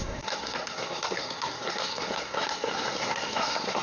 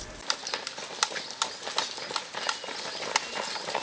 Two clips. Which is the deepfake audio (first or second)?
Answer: first